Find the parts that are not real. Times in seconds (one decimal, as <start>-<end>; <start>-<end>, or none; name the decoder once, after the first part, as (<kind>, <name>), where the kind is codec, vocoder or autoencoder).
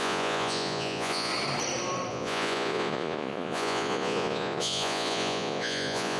0.0-1.3 (vocoder, Vocos); 2.1-6.2